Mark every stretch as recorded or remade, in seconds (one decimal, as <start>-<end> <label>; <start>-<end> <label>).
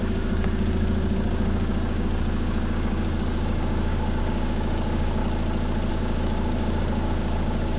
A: 0.0-5.2 remade; 5.2-5.9 recorded; 5.9-7.8 remade